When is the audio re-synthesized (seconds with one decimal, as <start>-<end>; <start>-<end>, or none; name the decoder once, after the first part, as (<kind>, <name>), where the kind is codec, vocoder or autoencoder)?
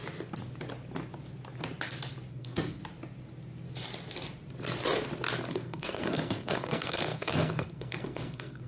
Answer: 2.3-2.8 (codec, SNAC); 5.5-8.7